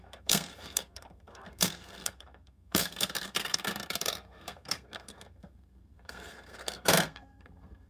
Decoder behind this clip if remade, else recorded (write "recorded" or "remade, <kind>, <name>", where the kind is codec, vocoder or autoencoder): remade, codec, SNAC